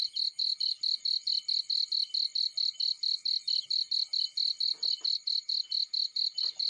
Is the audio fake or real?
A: real